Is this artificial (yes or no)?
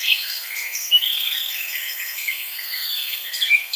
yes